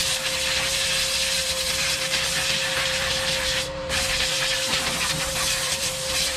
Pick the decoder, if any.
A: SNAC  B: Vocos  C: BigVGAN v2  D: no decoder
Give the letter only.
C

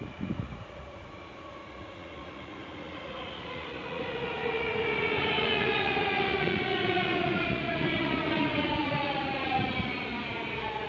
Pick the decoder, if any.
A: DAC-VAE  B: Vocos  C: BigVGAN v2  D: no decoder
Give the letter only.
B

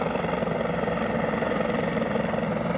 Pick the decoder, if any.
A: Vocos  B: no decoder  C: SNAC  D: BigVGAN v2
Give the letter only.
B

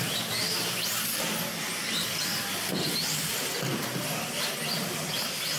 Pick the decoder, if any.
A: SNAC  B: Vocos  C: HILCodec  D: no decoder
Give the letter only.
D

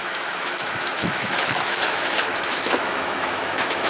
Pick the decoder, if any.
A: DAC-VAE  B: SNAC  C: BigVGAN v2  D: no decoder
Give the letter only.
A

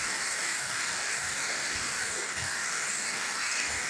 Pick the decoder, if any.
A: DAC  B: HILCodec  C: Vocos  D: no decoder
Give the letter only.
A